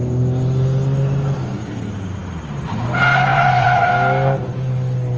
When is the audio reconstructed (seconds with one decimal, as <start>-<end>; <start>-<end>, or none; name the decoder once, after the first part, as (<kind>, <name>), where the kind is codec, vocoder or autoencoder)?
2.2-2.9 (vocoder, BigVGAN v2); 3.3-3.9